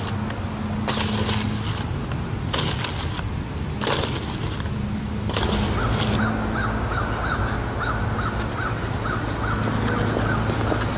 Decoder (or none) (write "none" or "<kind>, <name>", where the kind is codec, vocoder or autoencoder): none